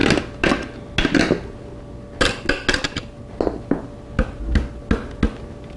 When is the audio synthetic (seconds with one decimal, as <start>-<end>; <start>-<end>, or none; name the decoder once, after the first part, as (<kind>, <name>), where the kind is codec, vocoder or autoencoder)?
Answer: none